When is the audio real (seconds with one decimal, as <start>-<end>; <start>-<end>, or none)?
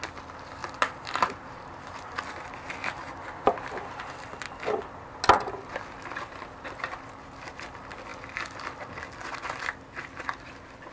0.0-0.6; 2.2-2.8; 4.2-10.9